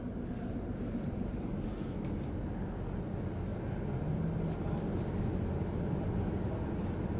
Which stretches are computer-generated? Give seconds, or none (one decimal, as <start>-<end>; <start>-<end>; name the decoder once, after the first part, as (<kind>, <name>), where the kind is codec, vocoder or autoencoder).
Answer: none